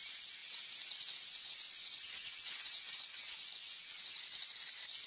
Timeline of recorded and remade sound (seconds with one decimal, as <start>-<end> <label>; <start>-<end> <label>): 0.0-1.3 recorded; 1.3-4.0 remade; 4.0-5.1 recorded